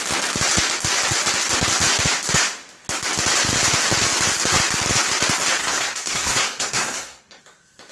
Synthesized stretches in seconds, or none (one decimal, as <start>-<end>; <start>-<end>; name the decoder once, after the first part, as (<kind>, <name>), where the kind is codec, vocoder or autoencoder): 5.6-7.4 (codec, SNAC)